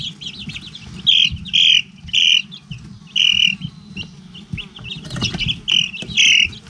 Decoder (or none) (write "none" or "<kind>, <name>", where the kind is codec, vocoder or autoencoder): none